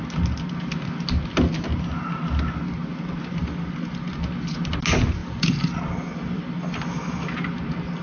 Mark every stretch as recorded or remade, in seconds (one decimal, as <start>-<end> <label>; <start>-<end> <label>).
0.0-3.4 recorded; 3.4-4.1 remade; 4.1-5.2 recorded; 5.2-6.9 remade; 6.9-8.0 recorded